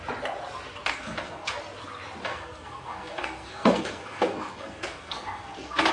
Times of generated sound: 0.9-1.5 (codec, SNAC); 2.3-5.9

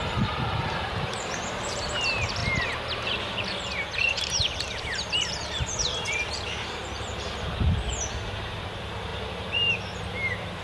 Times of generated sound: 0.0-2.4 (vocoder, BigVGAN v2); 3.2-10.6

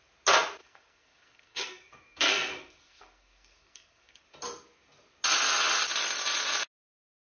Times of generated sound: 0.6-4.2 (codec, SNAC)

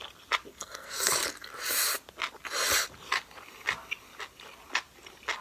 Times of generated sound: 0.5-1.1 (codec, SNAC)

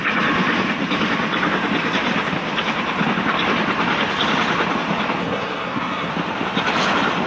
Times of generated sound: 5.2-6.1 (codec, SNAC)

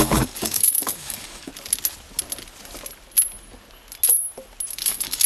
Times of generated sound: 0.0-1.5 (codec, DAC); 4.7-5.3